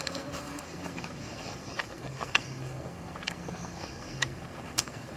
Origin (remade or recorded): remade